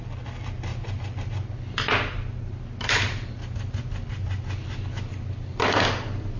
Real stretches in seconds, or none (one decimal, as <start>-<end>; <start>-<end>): 0.0-6.4